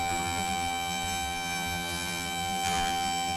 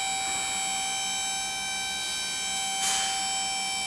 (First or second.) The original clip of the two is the second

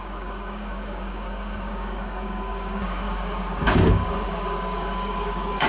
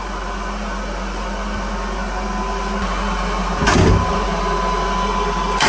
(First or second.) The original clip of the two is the second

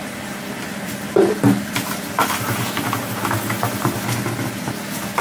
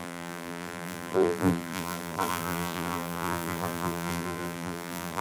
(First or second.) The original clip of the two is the first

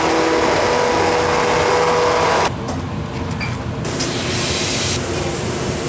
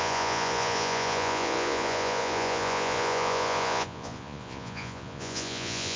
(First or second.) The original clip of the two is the first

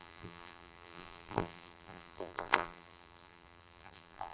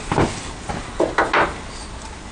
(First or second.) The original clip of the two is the second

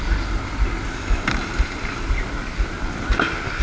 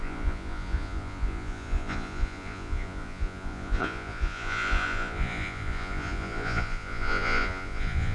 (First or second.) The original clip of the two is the first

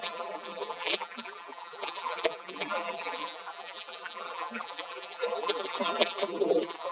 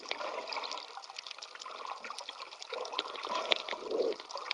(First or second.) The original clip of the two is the second